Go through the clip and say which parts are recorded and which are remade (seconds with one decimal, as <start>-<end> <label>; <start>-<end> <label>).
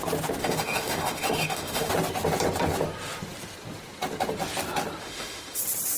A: 0.0-0.4 recorded; 0.4-1.9 remade; 1.9-5.0 recorded; 5.0-5.6 remade; 5.6-6.0 recorded